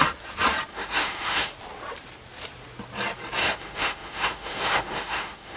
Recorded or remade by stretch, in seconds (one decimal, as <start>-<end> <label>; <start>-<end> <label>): 0.0-0.7 recorded; 0.7-1.5 remade; 1.5-3.4 recorded; 3.4-5.6 remade